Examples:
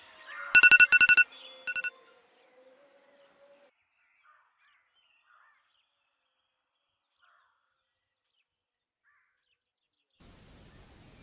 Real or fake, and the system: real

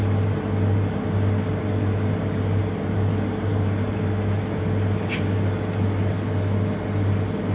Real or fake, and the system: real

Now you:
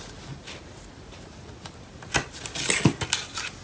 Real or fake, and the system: real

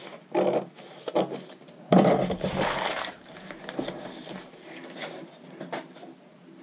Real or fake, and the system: real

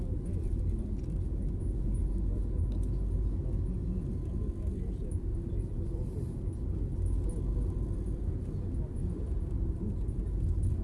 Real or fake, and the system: real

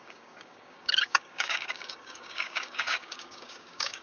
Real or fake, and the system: fake, codec, DAC